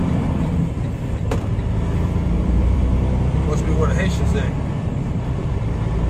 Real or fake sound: fake